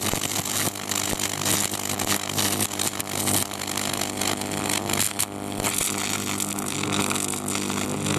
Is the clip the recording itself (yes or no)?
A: yes